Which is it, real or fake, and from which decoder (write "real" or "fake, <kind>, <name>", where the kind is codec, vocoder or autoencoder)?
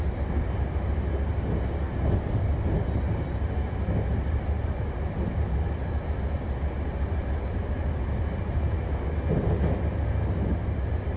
real